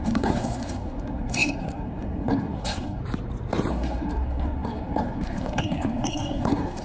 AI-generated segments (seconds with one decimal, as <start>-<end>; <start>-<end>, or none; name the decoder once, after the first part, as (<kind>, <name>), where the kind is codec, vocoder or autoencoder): 0.0-3.0 (codec, SNAC); 3.7-6.8